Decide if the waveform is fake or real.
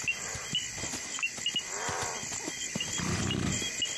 real